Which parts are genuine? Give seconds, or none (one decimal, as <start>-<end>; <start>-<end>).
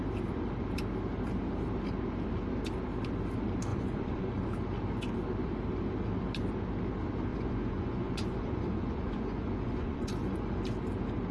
0.0-3.7; 4.4-7.3; 10.6-11.3